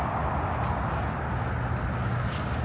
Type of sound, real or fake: real